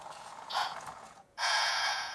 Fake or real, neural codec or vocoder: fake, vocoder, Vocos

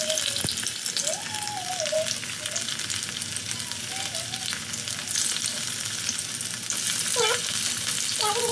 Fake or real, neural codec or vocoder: real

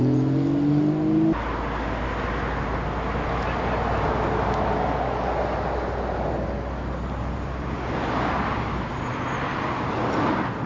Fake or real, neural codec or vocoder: real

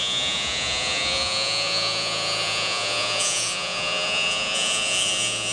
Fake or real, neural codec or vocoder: fake, vocoder, Vocos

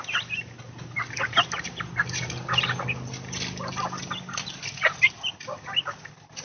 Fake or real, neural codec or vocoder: real